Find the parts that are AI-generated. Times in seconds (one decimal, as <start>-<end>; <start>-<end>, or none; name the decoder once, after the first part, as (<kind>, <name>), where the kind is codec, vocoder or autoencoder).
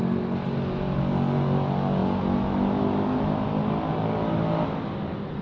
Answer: none